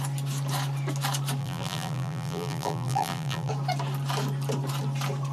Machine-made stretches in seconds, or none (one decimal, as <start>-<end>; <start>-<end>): 1.4-3.5